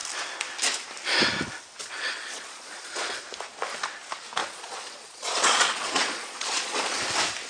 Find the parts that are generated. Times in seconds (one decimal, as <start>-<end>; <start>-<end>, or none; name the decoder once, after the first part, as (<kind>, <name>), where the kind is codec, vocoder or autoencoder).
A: 1.8-3.2 (vocoder, Vocos); 4.4-7.0